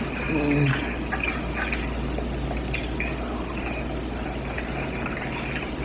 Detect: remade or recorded recorded